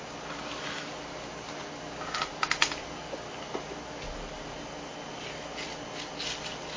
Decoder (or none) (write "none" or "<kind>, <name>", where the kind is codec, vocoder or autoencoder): none